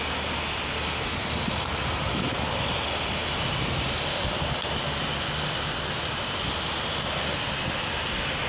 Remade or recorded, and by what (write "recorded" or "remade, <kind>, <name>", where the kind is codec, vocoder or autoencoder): recorded